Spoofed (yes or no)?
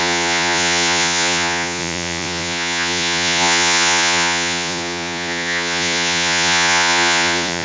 yes